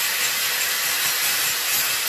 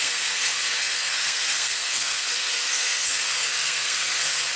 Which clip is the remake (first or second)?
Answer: second